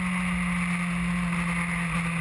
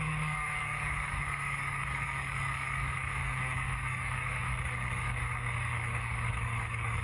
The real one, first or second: first